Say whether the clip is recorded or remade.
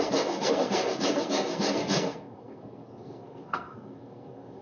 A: remade